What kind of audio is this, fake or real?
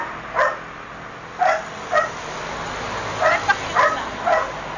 real